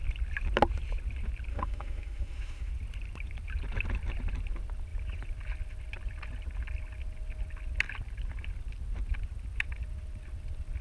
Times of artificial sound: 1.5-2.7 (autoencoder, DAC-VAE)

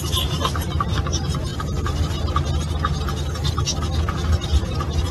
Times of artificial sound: 0.0-1.5 (vocoder, BigVGAN v2); 4.6-5.1

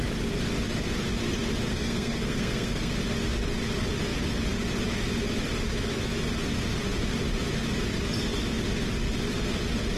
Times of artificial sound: 1.7-2.9 (codec, SNAC)

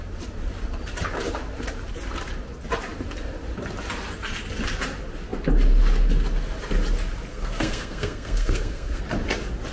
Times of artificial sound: 7.3-9.0 (codec, SNAC)

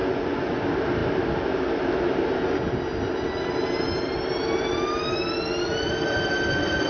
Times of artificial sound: 0.0-0.6 (vocoder, Vocos)

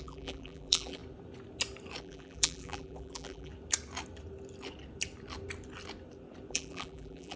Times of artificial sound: 0.0-1.0 (vocoder, BigVGAN v2); 2.0-3.5; 6.5-7.4

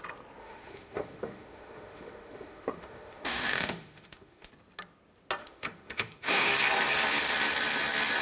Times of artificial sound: 0.4-4.5 (autoencoder, DAC-VAE); 5.4-6.5